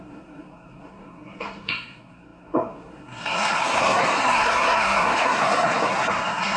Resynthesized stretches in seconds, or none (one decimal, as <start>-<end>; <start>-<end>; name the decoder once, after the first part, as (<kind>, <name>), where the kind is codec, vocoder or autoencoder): 0.0-6.6 (codec, SNAC)

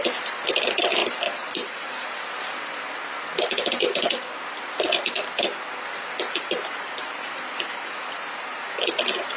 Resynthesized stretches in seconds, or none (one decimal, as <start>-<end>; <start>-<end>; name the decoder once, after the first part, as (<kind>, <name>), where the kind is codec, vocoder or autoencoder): none

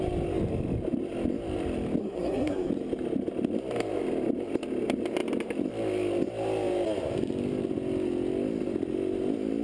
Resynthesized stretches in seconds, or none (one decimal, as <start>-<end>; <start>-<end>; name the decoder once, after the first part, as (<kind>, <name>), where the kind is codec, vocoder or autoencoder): 2.0-2.7 (codec, SNAC)

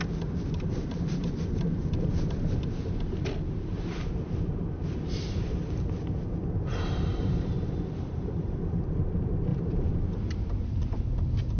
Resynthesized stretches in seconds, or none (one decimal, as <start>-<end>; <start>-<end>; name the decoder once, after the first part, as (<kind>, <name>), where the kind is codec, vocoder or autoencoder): 3.7-5.7 (vocoder, BigVGAN v2); 7.1-9.0; 9.5-11.6

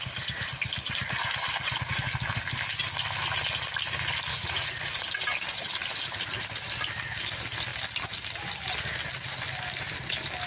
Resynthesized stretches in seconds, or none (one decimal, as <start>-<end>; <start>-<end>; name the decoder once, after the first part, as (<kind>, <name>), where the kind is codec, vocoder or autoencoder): 4.3-5.0 (vocoder, Vocos)